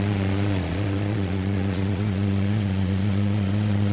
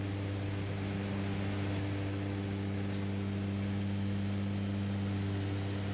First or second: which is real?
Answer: second